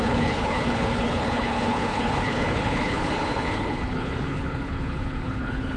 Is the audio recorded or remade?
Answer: remade